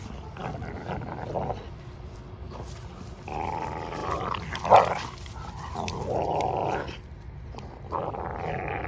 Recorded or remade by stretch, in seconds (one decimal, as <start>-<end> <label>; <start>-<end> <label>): 0.0-8.9 recorded